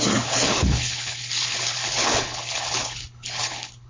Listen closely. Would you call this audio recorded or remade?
remade